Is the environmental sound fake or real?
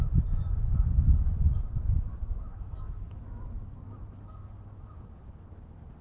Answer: fake